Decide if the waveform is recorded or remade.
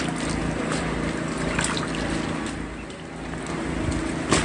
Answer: recorded